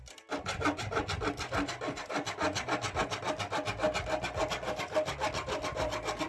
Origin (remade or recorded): recorded